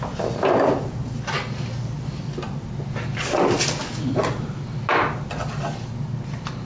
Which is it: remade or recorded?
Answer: recorded